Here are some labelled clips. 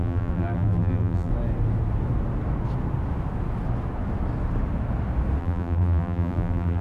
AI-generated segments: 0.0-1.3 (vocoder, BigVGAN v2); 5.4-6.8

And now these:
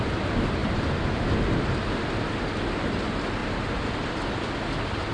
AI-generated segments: 0.6-1.5 (vocoder, BigVGAN v2); 3.4-4.6

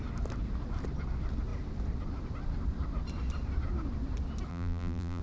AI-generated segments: 4.5-5.2 (vocoder, BigVGAN v2)

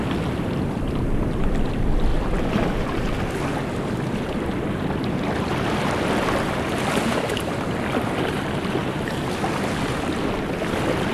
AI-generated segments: 8.8-9.3 (vocoder, BigVGAN v2)

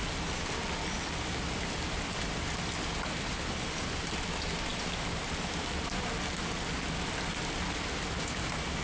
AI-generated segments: 4.7-7.3 (vocoder, BigVGAN v2)